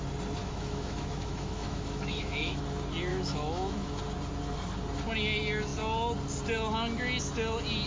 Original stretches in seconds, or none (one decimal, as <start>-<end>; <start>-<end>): 0.0-0.4; 2.6-3.1; 4.0-7.9